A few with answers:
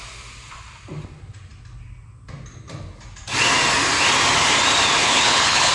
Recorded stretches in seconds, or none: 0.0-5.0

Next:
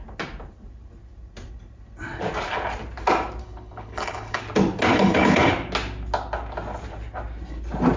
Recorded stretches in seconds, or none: 0.0-3.4; 4.4-4.9; 5.5-8.0

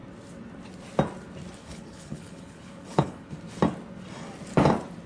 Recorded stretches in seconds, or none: 0.0-1.6; 3.3-5.1

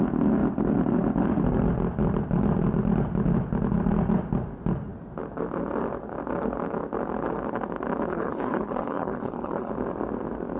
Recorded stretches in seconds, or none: 0.0-8.1; 9.7-10.6